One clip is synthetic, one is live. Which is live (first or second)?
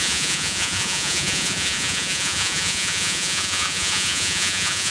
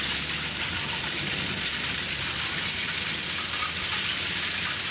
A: second